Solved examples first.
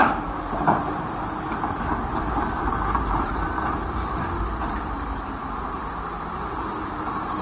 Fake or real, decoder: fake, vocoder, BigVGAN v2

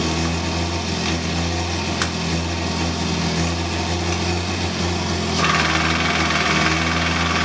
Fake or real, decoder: real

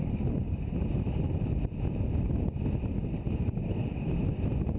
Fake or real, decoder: real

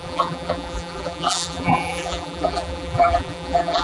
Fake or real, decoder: fake, vocoder, BigVGAN v2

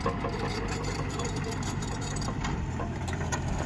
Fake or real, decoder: fake, vocoder, BigVGAN v2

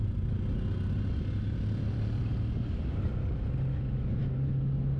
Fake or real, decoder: real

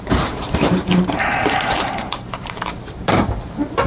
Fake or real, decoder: fake, vocoder, BigVGAN v2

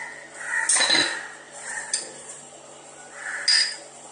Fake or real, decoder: real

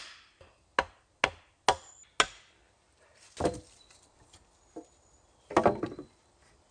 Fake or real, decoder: real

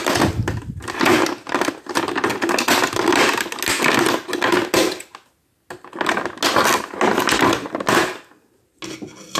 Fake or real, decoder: real